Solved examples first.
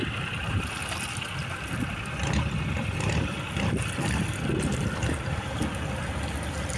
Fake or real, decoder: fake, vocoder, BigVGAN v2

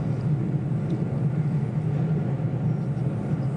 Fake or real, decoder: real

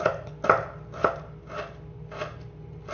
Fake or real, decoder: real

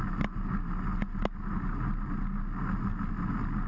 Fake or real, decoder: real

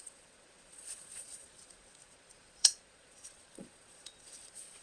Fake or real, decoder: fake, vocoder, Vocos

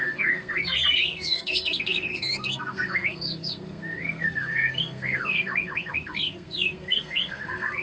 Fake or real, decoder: fake, codec, SNAC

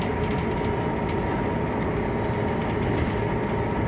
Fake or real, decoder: real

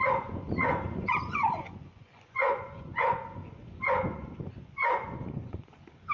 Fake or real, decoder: fake, vocoder, Vocos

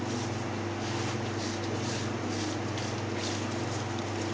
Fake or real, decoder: real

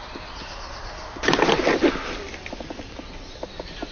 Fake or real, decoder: real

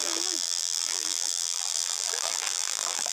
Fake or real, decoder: fake, vocoder, BigVGAN v2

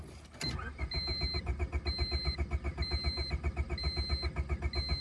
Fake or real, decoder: real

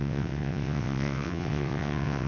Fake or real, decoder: fake, vocoder, WaveNeXt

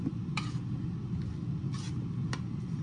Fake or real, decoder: real